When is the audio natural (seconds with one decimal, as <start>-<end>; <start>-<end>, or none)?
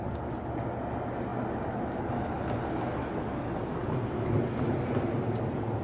0.0-5.8